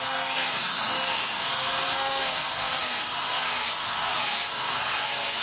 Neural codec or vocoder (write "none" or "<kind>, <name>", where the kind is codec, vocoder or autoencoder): codec, SNAC